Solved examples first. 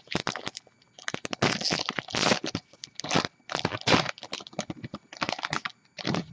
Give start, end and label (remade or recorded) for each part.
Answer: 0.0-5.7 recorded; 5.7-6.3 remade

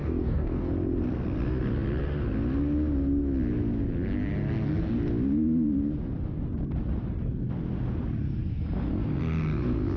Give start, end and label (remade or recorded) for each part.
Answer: 0.0-0.7 remade; 0.7-10.0 recorded

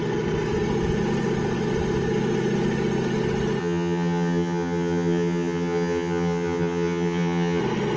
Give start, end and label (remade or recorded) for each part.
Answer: 0.0-3.6 recorded; 3.6-7.6 remade; 7.6-8.0 recorded